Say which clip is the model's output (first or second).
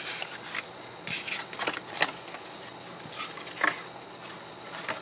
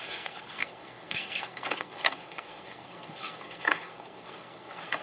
second